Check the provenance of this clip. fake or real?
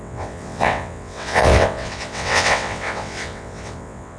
fake